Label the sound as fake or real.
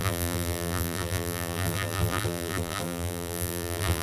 fake